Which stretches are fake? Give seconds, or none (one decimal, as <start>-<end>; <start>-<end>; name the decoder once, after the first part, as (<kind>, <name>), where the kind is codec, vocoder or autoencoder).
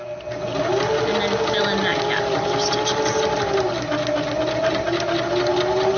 none